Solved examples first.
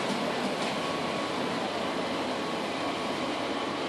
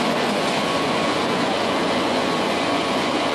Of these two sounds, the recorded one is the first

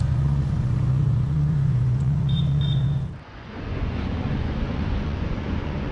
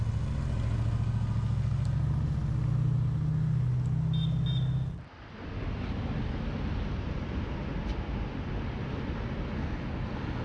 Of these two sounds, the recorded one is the second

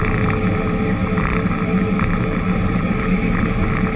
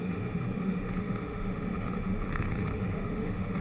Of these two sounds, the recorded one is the first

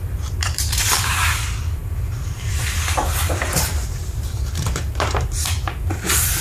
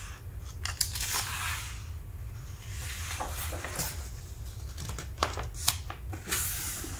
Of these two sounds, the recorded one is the second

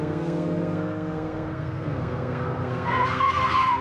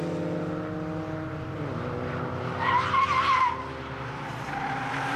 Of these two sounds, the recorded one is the second